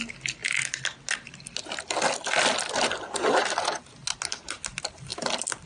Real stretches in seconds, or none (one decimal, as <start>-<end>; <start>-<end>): 0.0-5.7